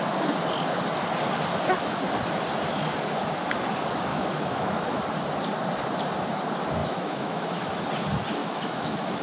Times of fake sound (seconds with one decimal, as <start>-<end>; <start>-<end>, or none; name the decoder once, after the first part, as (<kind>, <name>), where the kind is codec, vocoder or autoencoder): 4.1-5.0 (autoencoder, DAC-VAE); 6.8-7.8; 8.4-9.2